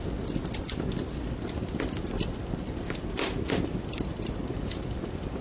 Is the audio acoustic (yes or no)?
yes